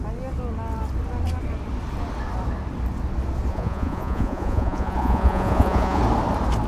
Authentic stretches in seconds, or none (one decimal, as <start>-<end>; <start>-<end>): 0.0-3.5; 6.0-6.7